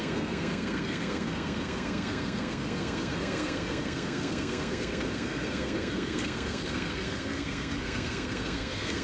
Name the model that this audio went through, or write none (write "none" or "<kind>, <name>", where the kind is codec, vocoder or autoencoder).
codec, SNAC